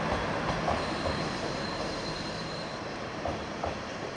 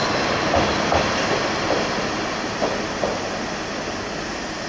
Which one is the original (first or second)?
second